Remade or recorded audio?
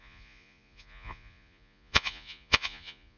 remade